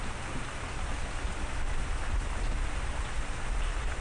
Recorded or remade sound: recorded